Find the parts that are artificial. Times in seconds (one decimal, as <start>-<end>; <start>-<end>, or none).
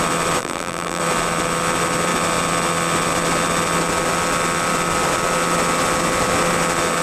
0.4-1.0